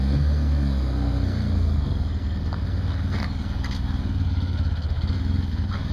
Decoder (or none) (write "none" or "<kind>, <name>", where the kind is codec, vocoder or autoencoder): codec, SNAC